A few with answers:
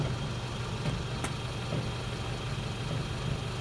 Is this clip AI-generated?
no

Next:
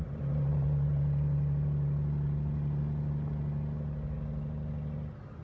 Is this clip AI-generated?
no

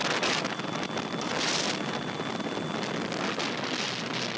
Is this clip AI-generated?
no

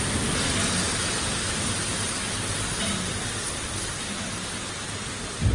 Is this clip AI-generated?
no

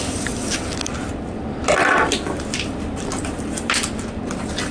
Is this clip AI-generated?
no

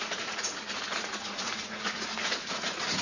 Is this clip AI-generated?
yes